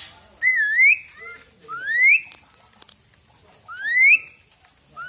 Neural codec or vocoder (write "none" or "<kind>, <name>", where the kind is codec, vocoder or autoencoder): none